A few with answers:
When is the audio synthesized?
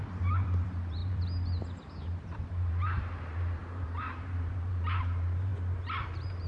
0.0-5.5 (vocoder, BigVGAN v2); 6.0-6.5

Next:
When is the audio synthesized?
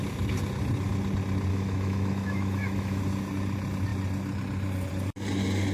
1.5-3.0 (autoencoder, DAC-VAE)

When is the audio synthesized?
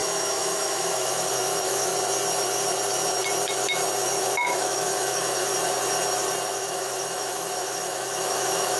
0.0-1.9 (autoencoder, DAC-VAE); 4.2-5.5; 6.5-8.8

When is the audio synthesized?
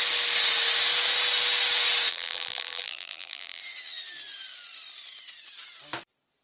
2.1-3.6 (vocoder, BigVGAN v2)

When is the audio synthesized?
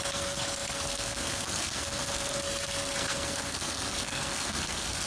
0.0-5.1 (codec, SNAC)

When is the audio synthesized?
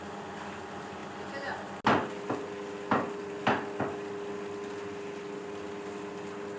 none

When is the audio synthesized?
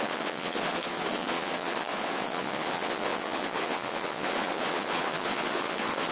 0.0-6.1 (vocoder, Vocos)